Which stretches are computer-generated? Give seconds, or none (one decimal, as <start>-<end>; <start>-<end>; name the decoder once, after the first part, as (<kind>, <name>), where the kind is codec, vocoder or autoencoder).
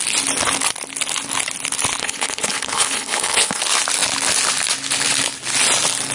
2.0-3.6 (codec, HILCodec)